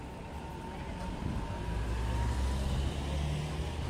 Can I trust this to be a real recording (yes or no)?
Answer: yes